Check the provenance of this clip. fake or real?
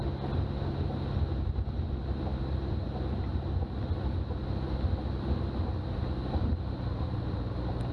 real